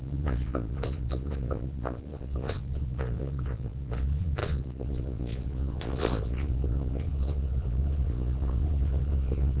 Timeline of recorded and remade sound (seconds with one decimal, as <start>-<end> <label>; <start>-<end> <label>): 0.0-9.6 remade

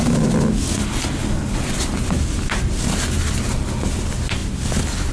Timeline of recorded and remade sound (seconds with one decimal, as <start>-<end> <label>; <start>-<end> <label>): 0.0-5.1 recorded

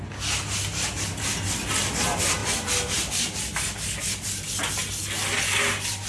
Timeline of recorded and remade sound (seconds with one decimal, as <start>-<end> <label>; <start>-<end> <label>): 0.0-6.1 recorded

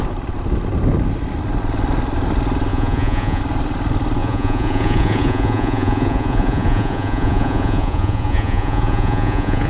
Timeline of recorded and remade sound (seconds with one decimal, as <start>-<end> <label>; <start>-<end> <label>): 0.0-2.7 recorded; 2.7-3.4 remade; 3.4-4.2 recorded; 4.2-9.7 remade

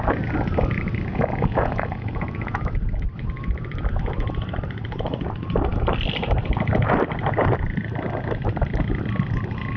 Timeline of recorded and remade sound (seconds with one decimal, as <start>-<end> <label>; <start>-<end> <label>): 0.0-1.1 recorded; 1.1-2.6 remade; 2.6-9.8 recorded

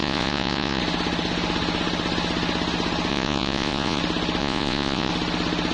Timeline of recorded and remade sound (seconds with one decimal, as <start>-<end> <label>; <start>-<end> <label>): 0.0-0.8 remade; 0.8-3.1 recorded; 3.1-4.0 remade; 4.0-4.4 recorded; 4.4-5.1 remade; 5.1-5.7 recorded